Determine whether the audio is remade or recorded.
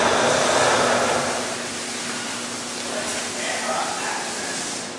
recorded